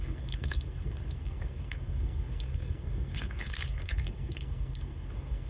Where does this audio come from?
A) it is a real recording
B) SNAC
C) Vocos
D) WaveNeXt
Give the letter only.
B